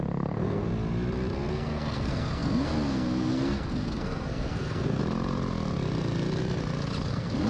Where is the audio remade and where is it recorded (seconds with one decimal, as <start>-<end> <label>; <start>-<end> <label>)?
0.0-0.7 remade; 0.7-1.5 recorded; 1.5-5.0 remade; 5.0-7.1 recorded; 7.1-7.5 remade